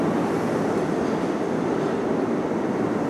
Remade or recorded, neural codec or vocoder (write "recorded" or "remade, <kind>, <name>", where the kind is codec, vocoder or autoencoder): remade, vocoder, BigVGAN v2